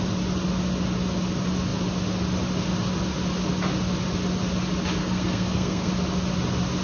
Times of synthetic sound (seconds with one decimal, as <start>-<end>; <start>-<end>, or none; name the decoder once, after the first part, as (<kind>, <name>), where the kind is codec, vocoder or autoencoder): 5.0-5.9 (codec, SNAC)